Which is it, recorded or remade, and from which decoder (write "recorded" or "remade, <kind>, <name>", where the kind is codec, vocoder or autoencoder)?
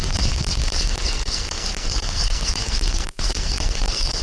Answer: remade, codec, SNAC